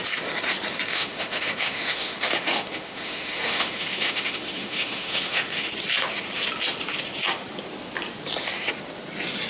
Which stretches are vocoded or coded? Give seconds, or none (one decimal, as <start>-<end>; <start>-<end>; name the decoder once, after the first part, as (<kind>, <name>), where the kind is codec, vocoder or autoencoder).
0.9-5.7 (autoencoder, DAC-VAE)